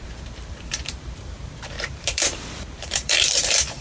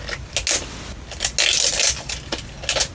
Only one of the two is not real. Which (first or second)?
first